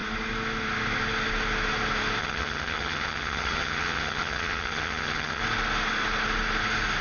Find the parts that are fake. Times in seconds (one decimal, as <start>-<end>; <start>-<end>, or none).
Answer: 2.2-5.4